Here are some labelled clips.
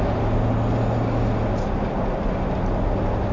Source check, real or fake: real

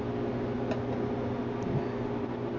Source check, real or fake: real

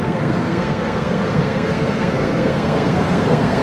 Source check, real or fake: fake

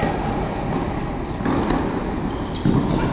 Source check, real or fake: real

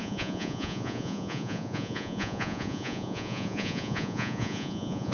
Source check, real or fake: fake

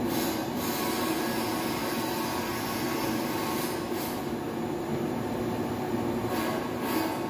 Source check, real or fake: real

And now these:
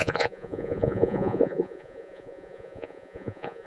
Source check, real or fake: fake